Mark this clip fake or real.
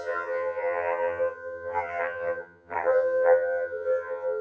fake